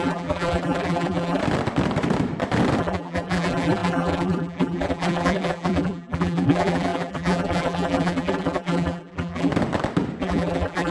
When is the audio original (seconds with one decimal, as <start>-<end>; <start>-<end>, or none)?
1.4-2.8; 9.5-10.2